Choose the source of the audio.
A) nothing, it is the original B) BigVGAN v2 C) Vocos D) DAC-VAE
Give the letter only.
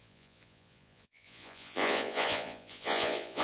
C